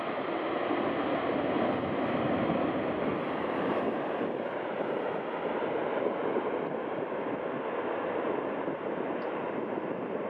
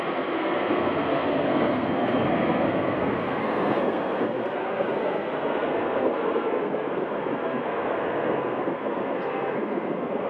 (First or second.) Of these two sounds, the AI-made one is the second